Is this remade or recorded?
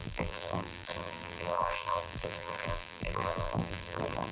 remade